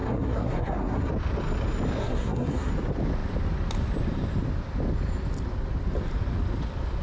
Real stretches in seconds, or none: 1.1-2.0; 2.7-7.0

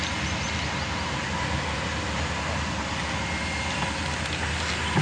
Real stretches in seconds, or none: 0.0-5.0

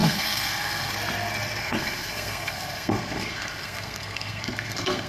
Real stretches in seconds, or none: 0.9-1.6

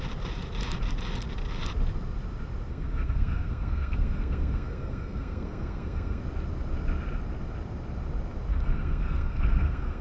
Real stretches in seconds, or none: 0.0-2.7; 6.2-8.5

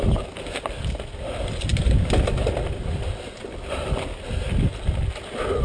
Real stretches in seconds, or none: 0.0-5.6

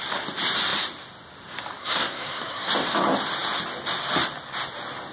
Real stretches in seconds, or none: 0.0-1.8; 2.7-5.1